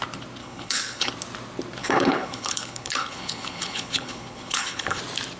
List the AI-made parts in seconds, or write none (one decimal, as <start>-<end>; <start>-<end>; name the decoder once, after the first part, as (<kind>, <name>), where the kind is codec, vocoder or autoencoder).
0.4-1.1 (codec, HILCodec); 1.8-5.0